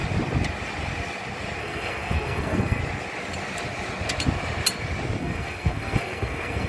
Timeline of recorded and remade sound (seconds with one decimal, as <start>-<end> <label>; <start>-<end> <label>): 0.0-1.6 recorded; 1.6-2.8 remade; 2.8-5.2 recorded; 5.2-6.7 remade